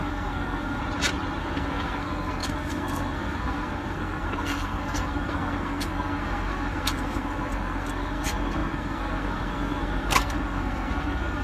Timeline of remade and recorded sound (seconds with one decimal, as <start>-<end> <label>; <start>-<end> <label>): 0.0-0.8 remade; 0.8-1.4 recorded; 1.4-11.4 remade